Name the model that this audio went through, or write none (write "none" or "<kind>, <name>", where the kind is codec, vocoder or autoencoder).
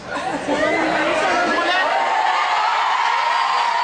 none